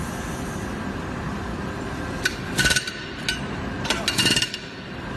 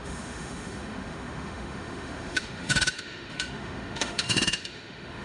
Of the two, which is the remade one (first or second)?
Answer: second